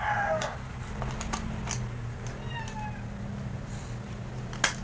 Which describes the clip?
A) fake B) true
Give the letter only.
B